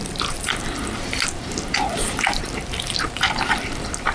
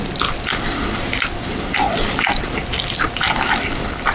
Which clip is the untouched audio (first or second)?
second